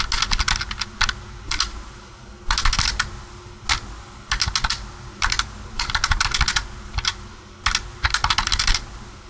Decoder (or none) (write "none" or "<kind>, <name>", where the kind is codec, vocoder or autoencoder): none